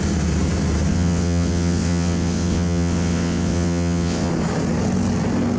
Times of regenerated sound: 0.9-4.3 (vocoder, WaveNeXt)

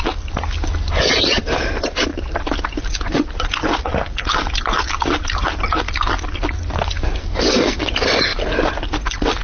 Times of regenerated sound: 7.2-7.8 (codec, SNAC)

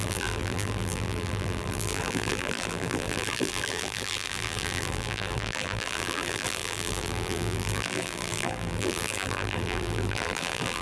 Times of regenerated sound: 0.0-10.8 (vocoder, BigVGAN v2)

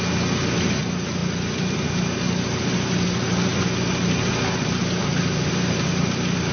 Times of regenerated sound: none

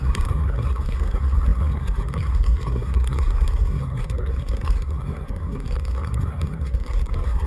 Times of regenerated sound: 0.0-7.5 (codec, SNAC)

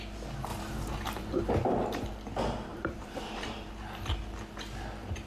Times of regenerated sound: 0.5-1.5 (vocoder, BigVGAN v2); 2.7-3.7